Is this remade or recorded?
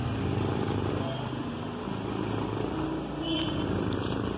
recorded